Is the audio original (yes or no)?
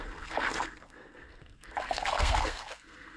no